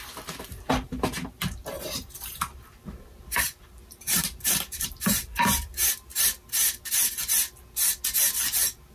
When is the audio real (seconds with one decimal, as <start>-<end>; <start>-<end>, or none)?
6.1-8.9